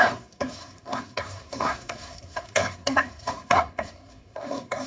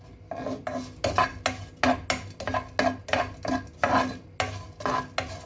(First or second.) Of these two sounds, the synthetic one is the first